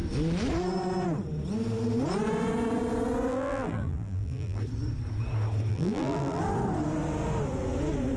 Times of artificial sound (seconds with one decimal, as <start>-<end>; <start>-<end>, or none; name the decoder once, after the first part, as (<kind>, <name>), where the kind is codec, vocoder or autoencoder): 3.3-4.6 (vocoder, BigVGAN v2); 5.7-6.4